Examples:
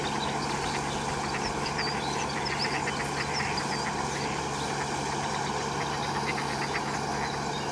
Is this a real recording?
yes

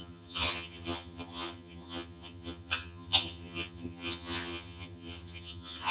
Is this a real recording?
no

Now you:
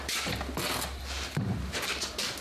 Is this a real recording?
no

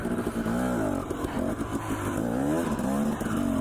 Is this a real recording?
yes